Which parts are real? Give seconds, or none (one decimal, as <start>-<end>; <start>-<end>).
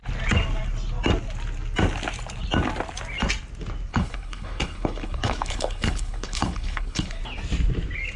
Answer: 0.0-3.9; 7.2-8.2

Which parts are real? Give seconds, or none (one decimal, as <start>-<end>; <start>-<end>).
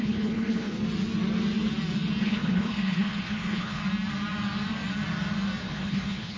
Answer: 0.8-2.2; 3.8-5.6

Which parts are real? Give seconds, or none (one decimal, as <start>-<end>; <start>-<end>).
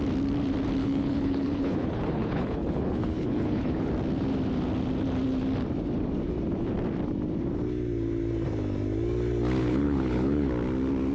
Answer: 0.0-0.8; 3.9-9.6; 10.5-11.1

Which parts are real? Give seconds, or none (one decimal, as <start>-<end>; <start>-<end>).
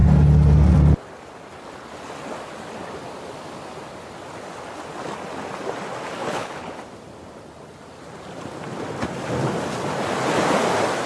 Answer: 0.0-6.2; 6.7-11.1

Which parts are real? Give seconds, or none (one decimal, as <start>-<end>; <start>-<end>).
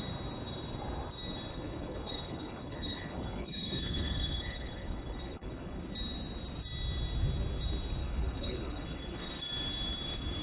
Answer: 0.0-1.5; 5.8-8.0; 9.3-10.4